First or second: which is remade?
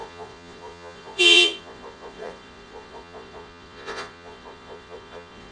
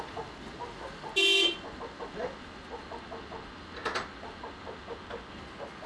first